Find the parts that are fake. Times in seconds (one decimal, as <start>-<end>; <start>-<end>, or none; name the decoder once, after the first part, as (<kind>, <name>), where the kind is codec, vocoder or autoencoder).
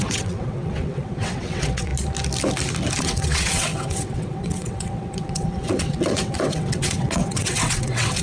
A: 0.0-1.9 (vocoder, WaveNeXt); 3.0-8.2